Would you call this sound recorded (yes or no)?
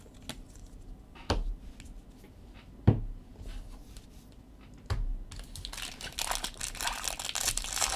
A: yes